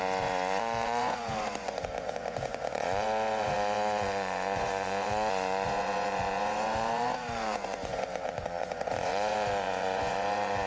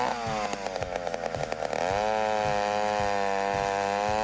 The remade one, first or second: first